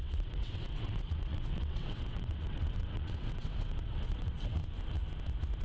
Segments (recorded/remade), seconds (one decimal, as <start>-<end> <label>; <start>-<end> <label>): 0.0-4.6 remade; 4.6-5.6 recorded